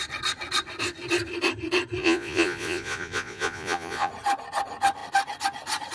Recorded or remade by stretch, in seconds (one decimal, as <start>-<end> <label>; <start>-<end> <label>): 0.0-2.0 recorded; 2.0-4.1 remade; 4.1-5.9 recorded